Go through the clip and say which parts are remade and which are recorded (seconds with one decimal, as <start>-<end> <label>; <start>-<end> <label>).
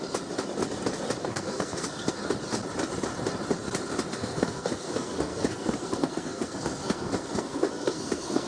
0.0-1.2 recorded; 1.2-2.2 remade; 2.2-4.1 recorded; 4.1-8.5 remade